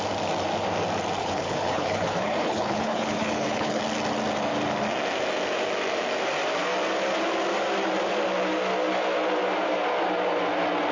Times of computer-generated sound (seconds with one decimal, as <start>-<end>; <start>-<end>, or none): 1.2-3.8